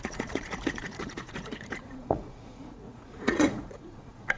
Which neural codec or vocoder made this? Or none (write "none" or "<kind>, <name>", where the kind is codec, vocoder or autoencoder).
vocoder, Vocos